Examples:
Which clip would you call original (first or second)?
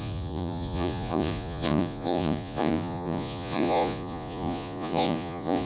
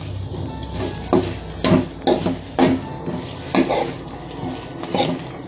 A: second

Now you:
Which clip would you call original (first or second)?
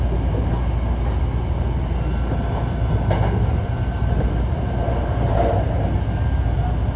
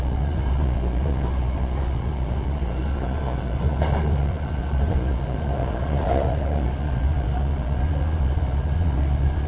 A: first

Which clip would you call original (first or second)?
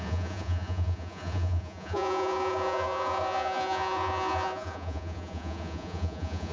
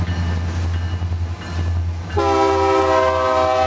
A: second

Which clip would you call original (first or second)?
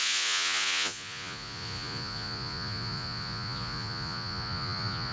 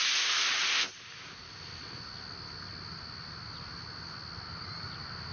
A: second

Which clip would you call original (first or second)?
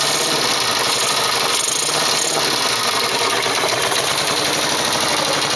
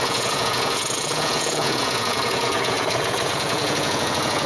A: first